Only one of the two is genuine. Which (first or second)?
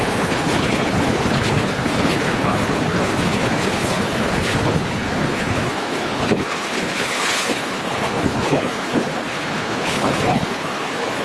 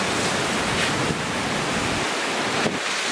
second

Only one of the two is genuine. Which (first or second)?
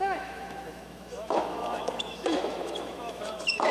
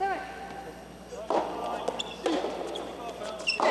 second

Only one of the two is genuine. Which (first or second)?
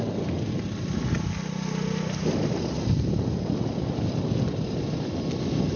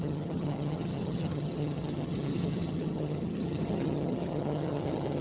first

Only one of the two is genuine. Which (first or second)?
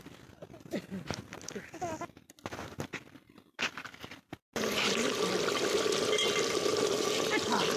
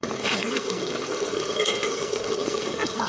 first